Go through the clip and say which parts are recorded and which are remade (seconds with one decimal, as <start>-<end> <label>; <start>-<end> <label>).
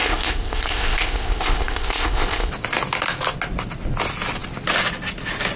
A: 0.0-2.5 remade; 2.5-5.6 recorded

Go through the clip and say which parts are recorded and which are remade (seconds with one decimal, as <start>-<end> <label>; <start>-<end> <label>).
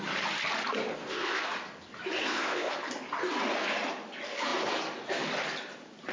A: 0.0-0.9 recorded; 0.9-1.5 remade; 1.5-2.2 recorded; 2.2-2.7 remade; 2.7-6.1 recorded